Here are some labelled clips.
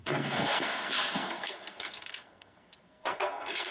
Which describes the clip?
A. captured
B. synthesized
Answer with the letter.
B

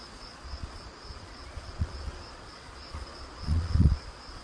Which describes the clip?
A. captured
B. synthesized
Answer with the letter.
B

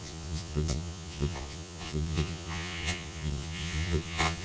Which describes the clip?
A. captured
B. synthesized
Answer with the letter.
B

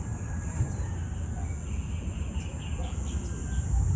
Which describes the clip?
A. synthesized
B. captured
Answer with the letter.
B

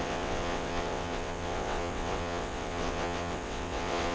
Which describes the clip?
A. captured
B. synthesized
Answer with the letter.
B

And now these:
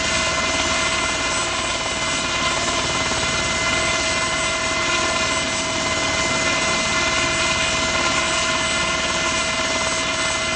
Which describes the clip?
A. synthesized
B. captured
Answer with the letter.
B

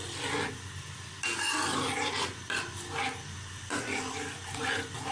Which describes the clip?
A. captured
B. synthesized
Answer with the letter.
A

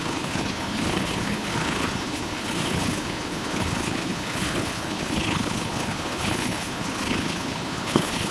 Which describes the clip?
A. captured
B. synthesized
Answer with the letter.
B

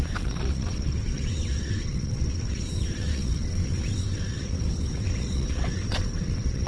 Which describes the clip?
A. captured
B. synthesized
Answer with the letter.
B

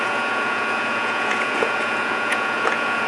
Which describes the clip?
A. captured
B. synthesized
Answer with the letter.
B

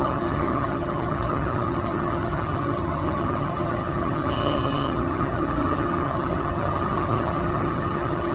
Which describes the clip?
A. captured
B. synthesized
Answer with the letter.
B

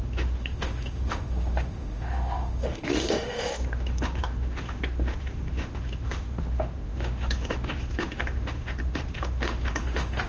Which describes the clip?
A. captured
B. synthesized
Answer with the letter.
B